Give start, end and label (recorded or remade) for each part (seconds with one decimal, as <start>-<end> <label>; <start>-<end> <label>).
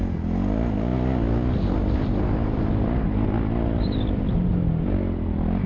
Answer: 0.0-5.7 recorded